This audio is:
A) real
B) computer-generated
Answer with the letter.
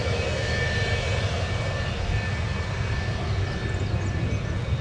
A